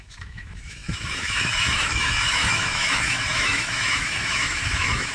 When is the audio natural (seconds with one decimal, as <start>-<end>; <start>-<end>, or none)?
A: none